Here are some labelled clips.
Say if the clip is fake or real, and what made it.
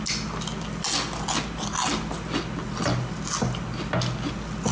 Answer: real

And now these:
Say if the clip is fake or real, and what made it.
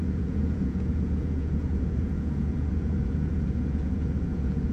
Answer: fake, vocoder, Vocos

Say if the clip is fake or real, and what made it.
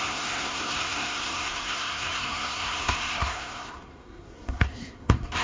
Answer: fake, codec, SNAC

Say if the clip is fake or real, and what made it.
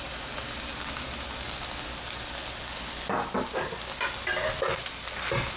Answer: real